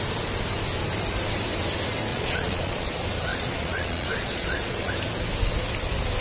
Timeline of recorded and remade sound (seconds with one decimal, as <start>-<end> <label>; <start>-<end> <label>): 0.0-2.1 recorded; 2.1-2.9 remade; 2.9-3.3 recorded; 3.3-4.9 remade; 4.9-6.2 recorded

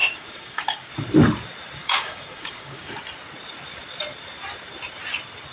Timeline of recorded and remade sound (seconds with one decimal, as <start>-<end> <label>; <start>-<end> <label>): 0.0-0.9 remade; 0.9-1.8 recorded; 1.8-3.0 remade; 3.0-5.5 recorded